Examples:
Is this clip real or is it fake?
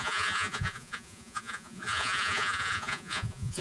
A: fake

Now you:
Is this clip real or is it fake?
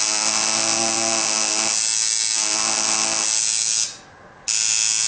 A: real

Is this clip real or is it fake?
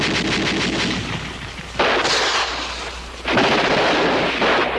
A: real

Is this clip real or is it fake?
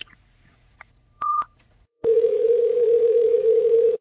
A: fake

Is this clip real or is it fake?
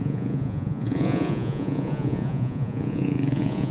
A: fake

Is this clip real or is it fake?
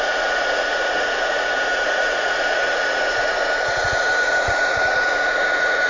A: fake